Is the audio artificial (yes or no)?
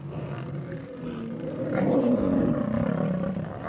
no